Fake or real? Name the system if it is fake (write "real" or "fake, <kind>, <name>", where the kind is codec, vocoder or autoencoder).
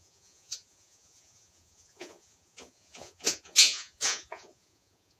fake, vocoder, Vocos